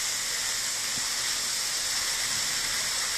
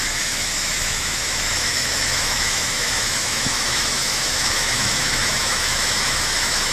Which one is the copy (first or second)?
second